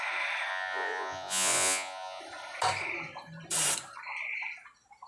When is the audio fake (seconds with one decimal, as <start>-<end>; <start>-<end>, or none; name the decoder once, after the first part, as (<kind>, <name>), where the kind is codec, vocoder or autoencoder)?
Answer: 0.5-2.2 (vocoder, Vocos)